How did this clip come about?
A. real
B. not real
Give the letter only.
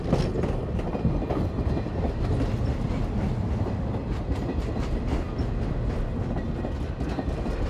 A